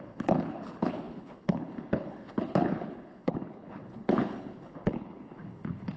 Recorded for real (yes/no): no